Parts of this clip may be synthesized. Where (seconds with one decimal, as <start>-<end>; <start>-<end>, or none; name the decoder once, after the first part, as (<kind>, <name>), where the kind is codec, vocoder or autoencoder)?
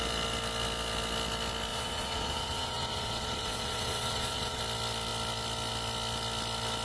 1.7-4.6 (vocoder, Vocos)